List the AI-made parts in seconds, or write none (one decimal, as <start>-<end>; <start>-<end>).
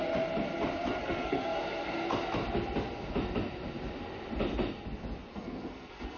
1.0-1.6; 5.3-6.2